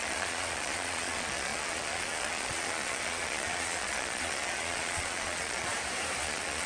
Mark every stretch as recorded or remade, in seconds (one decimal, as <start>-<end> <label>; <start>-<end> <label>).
0.0-5.7 remade; 5.7-6.2 recorded; 6.2-6.7 remade